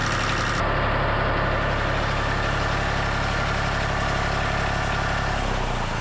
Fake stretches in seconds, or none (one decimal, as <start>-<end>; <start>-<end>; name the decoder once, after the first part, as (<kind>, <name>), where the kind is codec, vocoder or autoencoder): none